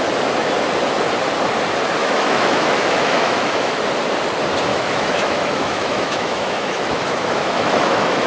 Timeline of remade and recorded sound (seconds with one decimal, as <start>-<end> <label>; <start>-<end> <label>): 0.0-2.0 recorded; 2.0-3.8 remade; 3.8-4.7 recorded; 4.7-8.3 remade